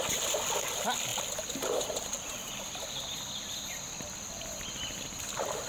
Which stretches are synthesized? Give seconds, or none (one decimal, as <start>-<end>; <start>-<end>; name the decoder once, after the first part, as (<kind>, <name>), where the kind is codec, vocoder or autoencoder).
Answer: none